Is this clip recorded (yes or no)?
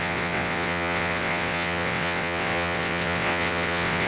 no